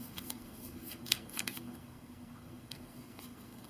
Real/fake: fake